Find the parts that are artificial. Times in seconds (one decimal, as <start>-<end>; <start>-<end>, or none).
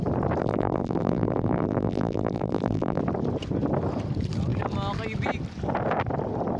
0.4-3.0